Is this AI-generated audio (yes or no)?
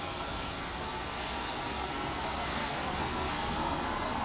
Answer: yes